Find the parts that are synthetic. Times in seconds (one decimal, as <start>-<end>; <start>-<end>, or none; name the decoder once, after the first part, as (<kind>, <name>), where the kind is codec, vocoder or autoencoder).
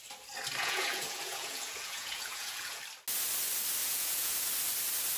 0.6-2.8 (vocoder, Vocos); 3.8-4.3